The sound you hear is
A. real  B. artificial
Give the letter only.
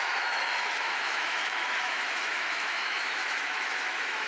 B